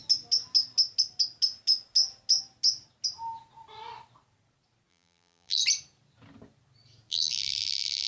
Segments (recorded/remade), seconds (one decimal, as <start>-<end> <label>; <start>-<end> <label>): 0.0-4.9 recorded; 4.9-5.6 remade; 5.6-7.1 recorded; 7.1-8.1 remade